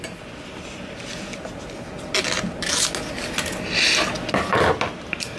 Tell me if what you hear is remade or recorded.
recorded